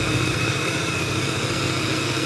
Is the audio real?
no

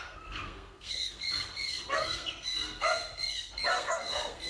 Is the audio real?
no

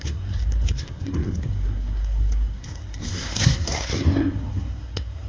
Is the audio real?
no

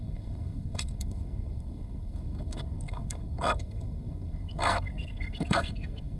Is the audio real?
no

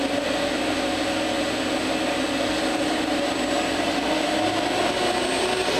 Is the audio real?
yes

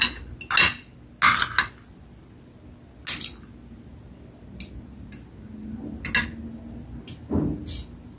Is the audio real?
yes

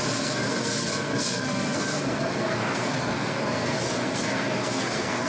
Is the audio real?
no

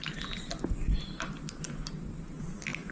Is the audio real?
yes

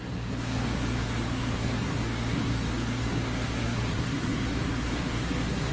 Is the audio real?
no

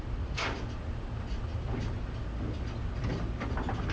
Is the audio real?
yes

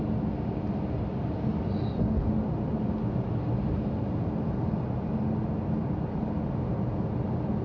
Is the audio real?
yes